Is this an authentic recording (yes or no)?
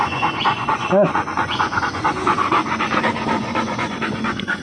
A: no